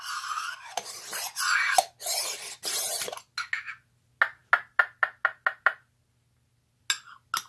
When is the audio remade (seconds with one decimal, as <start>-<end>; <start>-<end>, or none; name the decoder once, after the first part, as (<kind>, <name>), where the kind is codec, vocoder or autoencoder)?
none